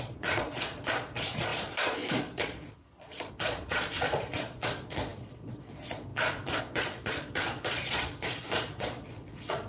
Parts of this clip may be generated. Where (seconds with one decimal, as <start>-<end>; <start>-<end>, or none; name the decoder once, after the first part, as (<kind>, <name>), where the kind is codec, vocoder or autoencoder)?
0.0-9.7 (vocoder, Vocos)